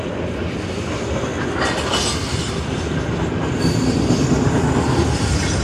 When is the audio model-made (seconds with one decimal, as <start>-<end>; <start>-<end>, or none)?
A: none